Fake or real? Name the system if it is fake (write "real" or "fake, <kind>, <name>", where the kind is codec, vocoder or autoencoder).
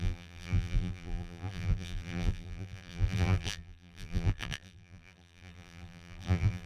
fake, vocoder, BigVGAN v2